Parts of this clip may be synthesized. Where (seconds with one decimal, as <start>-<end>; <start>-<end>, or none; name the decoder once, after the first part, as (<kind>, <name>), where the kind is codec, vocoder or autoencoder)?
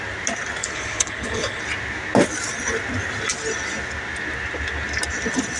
0.6-1.6 (codec, HILCodec)